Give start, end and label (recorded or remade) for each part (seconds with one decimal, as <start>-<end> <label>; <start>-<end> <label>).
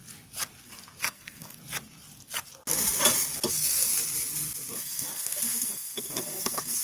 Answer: 0.0-1.0 recorded; 1.0-1.6 remade; 1.6-3.5 recorded; 3.5-3.9 remade; 3.9-4.8 recorded; 4.8-6.8 remade